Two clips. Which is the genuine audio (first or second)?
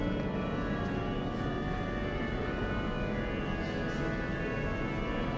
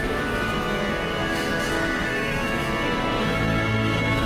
first